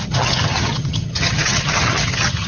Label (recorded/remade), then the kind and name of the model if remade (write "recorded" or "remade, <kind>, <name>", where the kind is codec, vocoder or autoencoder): remade, vocoder, HiFi-GAN